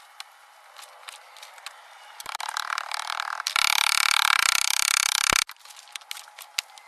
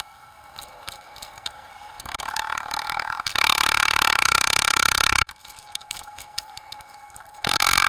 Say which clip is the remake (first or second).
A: second